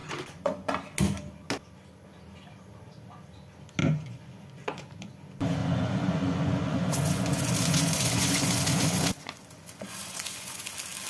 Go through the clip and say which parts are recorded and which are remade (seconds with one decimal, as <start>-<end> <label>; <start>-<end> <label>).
0.0-0.7 remade; 0.7-3.8 recorded; 3.8-5.1 remade; 5.1-5.6 recorded; 5.6-10.7 remade; 10.7-11.1 recorded